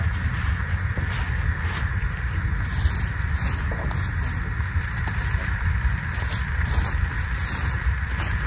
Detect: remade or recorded recorded